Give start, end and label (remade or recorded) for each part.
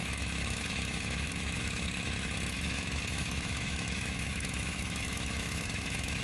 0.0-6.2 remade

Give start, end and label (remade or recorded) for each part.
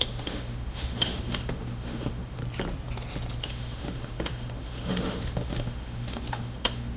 0.0-2.4 remade; 2.4-3.4 recorded; 3.4-7.0 remade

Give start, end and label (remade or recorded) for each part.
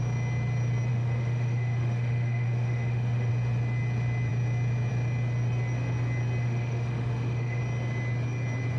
0.0-0.9 recorded; 0.9-3.3 remade; 3.3-6.4 recorded; 6.4-7.6 remade; 7.6-8.8 recorded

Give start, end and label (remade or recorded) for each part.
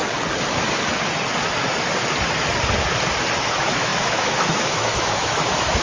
0.0-3.4 recorded; 3.4-5.8 remade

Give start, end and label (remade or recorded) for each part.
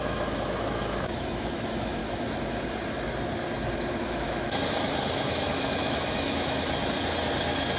0.0-2.0 remade; 2.0-4.0 recorded; 4.0-6.8 remade; 6.8-7.8 recorded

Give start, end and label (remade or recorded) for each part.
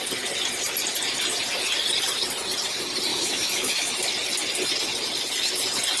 0.0-3.1 recorded; 3.1-3.9 remade; 3.9-6.0 recorded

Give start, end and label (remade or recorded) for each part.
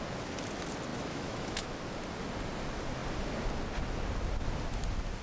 0.0-0.9 recorded; 0.9-1.7 remade; 1.7-5.2 recorded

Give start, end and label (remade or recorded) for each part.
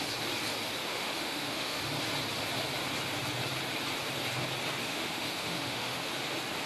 0.0-0.8 recorded; 0.8-1.8 remade; 1.8-4.8 recorded; 4.8-6.1 remade; 6.1-6.7 recorded